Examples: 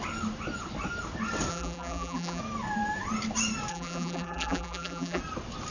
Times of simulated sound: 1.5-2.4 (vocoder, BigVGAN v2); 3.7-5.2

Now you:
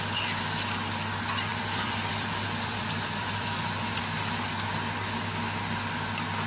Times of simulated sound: 1.5-4.0 (vocoder, BigVGAN v2)

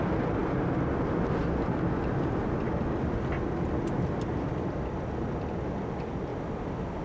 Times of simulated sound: none

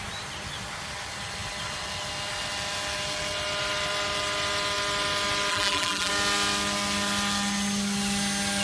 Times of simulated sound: 5.5-6.1 (vocoder, BigVGAN v2)